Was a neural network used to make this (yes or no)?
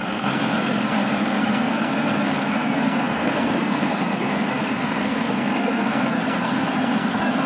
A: yes